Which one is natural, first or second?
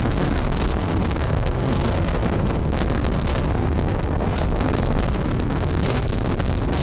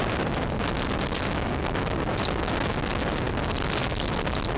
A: second